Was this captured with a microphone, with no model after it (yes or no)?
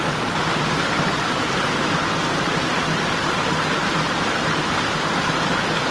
yes